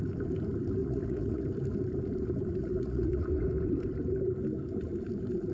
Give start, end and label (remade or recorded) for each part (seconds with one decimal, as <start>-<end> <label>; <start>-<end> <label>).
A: 0.0-0.8 recorded; 0.8-1.4 remade; 1.4-2.6 recorded; 2.6-3.3 remade; 3.3-5.5 recorded